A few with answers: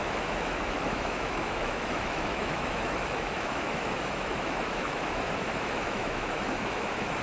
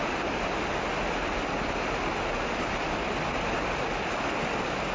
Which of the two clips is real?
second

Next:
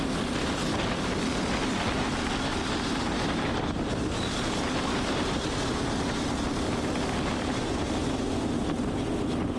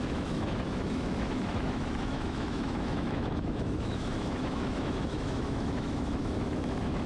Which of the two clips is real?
first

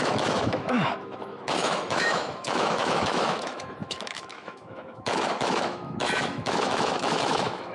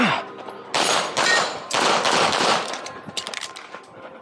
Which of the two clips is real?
second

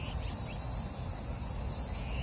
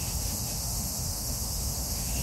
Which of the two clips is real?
first